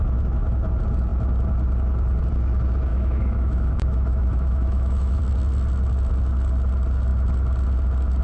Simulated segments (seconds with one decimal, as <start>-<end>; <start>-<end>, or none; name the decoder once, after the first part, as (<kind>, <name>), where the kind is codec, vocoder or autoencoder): 2.9-5.2 (autoencoder, DAC-VAE)